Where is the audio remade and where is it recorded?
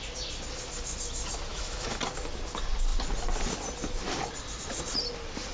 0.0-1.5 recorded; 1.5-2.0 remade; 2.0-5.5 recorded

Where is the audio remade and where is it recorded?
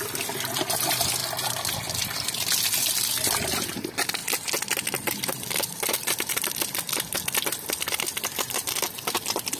0.0-9.6 recorded